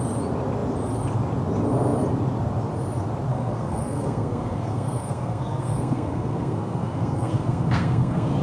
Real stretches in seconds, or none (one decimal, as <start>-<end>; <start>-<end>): 0.0-3.3